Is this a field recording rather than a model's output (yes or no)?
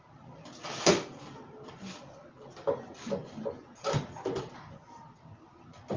yes